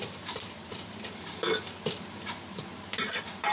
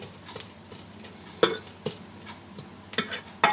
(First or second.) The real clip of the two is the second